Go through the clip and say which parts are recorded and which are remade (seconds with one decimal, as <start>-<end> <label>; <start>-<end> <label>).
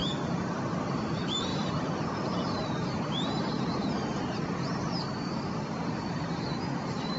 0.0-7.2 recorded